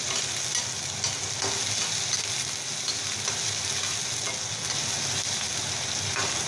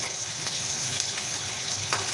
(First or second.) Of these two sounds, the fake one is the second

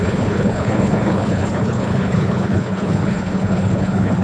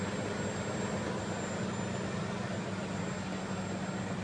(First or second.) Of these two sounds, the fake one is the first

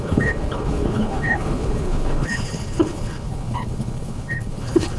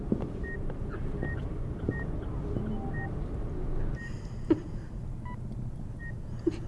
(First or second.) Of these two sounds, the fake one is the first